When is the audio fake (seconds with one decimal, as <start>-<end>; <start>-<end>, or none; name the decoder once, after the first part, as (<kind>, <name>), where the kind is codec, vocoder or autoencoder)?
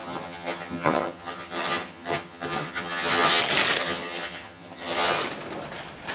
0.0-3.4 (vocoder, HiFi-GAN); 3.8-5.2